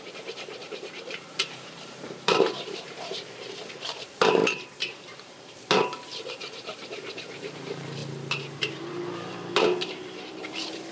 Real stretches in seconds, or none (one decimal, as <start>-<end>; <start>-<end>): 4.4-4.9; 8.0-8.6